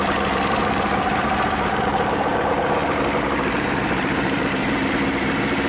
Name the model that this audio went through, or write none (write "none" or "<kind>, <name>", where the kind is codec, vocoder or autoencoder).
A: vocoder, BigVGAN v2